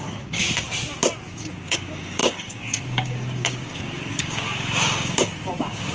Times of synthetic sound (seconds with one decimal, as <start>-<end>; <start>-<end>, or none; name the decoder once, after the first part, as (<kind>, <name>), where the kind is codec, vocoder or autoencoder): 0.0-0.4 (codec, DAC); 1.3-5.9